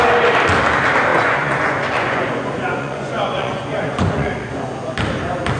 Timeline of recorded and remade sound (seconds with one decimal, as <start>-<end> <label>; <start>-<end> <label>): 0.0-1.1 recorded; 1.1-4.5 remade; 4.5-5.6 recorded